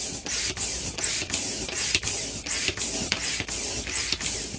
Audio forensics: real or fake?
real